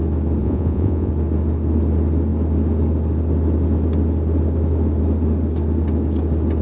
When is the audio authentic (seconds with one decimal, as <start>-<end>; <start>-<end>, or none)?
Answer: 0.0-0.4; 1.1-6.6